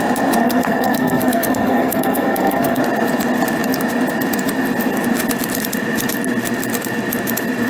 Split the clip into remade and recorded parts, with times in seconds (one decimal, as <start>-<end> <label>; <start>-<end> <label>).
0.0-0.4 recorded; 0.4-2.8 remade; 2.8-7.7 recorded